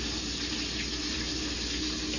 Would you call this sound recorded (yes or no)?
yes